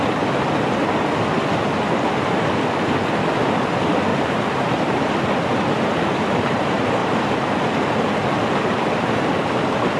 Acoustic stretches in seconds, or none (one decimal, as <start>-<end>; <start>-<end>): 0.0-4.1; 5.0-7.0; 7.6-10.0